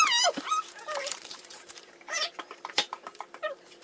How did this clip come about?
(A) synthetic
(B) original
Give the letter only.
A